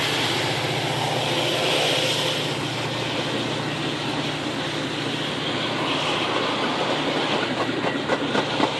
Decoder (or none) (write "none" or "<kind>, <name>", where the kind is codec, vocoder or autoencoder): none